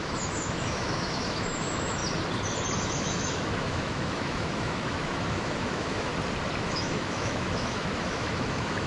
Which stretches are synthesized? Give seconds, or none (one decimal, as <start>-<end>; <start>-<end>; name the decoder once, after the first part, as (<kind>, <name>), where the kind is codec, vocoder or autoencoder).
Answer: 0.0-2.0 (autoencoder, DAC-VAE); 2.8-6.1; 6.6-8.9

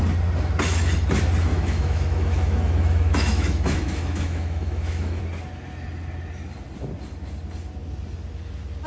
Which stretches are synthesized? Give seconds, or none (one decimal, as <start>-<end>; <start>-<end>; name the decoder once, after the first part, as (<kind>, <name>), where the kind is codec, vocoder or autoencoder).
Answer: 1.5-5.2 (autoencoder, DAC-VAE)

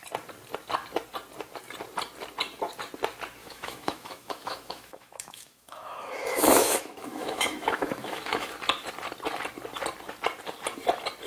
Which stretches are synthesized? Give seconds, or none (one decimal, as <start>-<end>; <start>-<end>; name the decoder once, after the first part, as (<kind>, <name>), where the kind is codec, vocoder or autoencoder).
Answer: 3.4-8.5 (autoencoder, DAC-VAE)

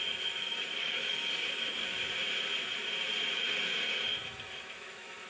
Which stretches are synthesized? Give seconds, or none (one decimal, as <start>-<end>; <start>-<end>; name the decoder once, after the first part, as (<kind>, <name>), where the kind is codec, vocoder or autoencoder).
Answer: 0.4-1.3 (autoencoder, DAC-VAE); 4.2-5.3

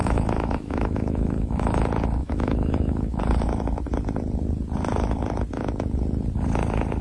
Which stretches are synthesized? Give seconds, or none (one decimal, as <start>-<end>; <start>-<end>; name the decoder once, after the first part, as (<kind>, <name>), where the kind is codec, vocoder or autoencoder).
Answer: 0.0-1.8 (autoencoder, DAC-VAE); 2.2-3.2